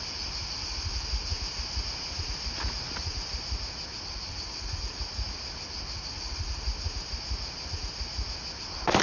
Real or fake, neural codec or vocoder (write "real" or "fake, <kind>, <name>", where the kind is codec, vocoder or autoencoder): real